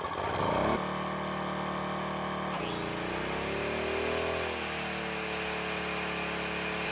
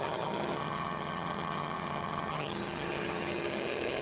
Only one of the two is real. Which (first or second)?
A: first